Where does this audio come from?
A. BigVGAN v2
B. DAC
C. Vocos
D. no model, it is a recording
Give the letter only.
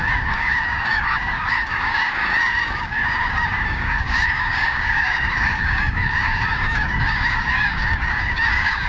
B